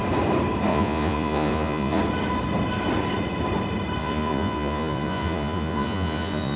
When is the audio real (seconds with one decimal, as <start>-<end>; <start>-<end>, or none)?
0.0-0.7; 2.0-4.0